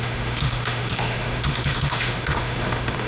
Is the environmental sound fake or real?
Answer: fake